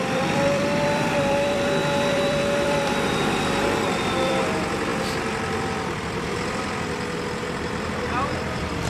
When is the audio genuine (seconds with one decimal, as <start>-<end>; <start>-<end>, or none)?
none